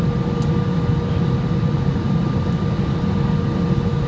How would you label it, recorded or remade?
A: recorded